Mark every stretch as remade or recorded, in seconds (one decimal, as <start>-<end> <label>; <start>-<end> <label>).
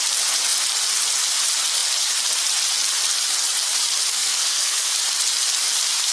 0.0-4.1 recorded; 4.1-4.9 remade; 4.9-6.1 recorded